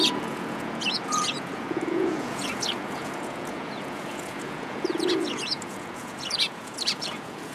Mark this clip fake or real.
fake